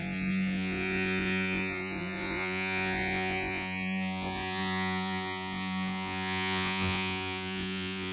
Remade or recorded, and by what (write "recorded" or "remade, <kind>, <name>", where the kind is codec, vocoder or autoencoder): remade, vocoder, Vocos